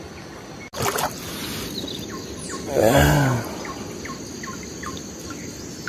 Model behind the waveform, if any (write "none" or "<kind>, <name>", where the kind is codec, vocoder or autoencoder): none